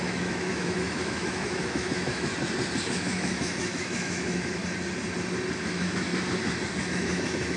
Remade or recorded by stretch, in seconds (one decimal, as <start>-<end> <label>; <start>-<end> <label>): 0.0-2.3 remade; 2.3-2.9 recorded; 2.9-4.6 remade; 4.6-5.6 recorded; 5.6-6.1 remade; 6.1-6.9 recorded; 6.9-7.6 remade